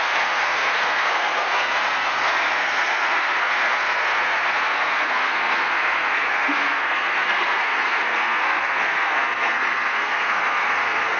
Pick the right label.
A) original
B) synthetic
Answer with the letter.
B